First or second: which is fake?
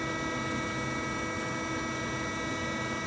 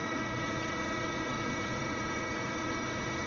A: second